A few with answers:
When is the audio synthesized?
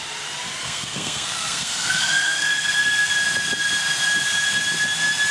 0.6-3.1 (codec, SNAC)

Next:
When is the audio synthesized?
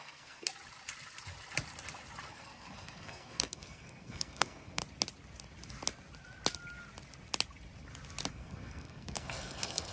0.0-0.5 (codec, SNAC); 2.3-4.8; 8.3-9.9